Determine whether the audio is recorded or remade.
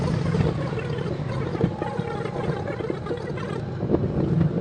recorded